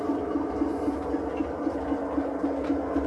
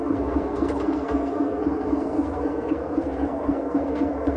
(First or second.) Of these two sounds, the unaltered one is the first